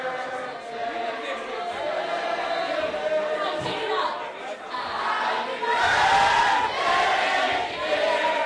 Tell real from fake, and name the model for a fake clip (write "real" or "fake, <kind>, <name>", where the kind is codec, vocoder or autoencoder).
real